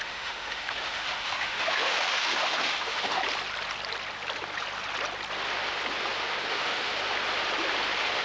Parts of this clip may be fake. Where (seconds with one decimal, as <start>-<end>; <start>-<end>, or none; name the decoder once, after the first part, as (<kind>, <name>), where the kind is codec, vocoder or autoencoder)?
0.0-3.2 (autoencoder, DAC-VAE); 6.5-6.9